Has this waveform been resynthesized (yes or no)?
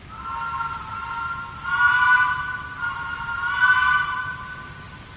no